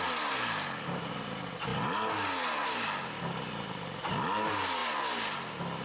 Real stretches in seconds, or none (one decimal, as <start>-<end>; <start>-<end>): 0.0-5.8